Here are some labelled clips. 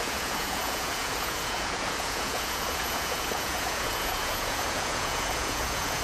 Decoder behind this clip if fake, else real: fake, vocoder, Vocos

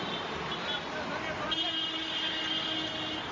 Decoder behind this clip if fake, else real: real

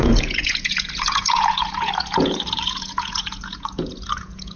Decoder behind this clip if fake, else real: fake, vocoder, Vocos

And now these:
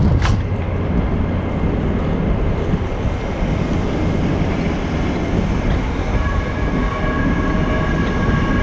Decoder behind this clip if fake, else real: real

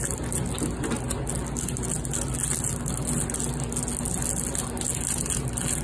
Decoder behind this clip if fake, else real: real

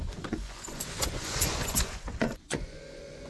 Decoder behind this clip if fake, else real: fake, vocoder, Vocos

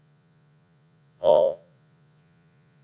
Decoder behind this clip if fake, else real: fake, vocoder, Vocos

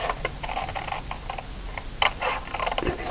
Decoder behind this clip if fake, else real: real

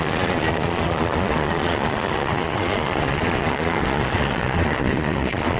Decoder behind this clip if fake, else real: fake, vocoder, Vocos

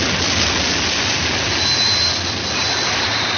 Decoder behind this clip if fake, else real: real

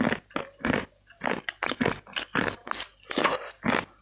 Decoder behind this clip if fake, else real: real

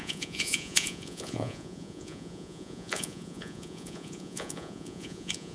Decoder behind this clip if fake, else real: fake, vocoder, Vocos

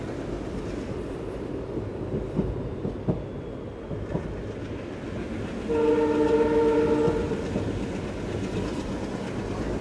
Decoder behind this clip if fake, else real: real